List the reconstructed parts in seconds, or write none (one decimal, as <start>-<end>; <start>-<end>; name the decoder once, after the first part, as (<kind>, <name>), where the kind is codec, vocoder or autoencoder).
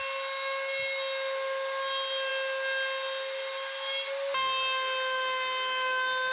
none